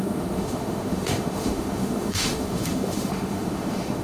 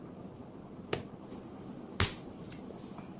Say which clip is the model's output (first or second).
first